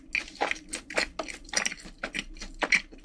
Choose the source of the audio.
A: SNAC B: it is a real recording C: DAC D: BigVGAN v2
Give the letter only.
B